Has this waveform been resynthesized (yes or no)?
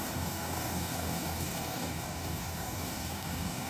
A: yes